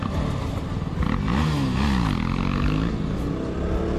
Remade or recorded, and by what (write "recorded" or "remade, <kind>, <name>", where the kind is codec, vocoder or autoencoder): recorded